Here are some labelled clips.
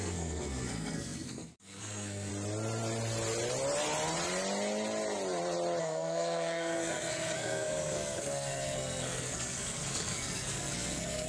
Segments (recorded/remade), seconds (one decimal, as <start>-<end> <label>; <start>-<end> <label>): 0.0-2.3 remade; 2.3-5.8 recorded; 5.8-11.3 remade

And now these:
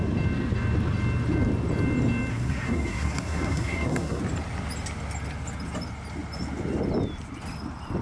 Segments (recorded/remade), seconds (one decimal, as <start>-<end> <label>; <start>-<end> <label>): 0.0-2.3 recorded; 2.3-4.2 remade; 4.2-8.0 recorded

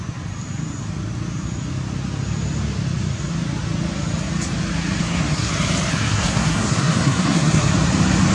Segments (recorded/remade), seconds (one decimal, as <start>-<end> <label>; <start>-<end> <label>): 0.0-5.0 recorded; 5.0-5.5 remade; 5.5-5.9 recorded; 5.9-7.7 remade; 7.7-8.3 recorded

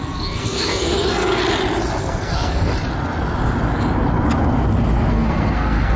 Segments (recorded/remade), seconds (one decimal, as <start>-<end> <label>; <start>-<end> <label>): 0.0-1.4 remade; 1.4-2.0 recorded; 2.0-2.7 remade; 2.7-5.1 recorded; 5.1-6.0 remade

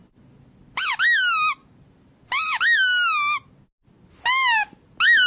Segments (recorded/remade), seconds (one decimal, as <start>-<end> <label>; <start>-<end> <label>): 0.0-5.3 recorded